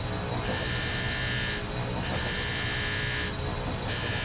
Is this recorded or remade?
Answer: recorded